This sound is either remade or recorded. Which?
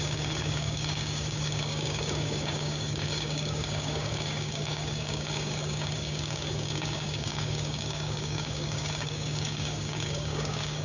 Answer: remade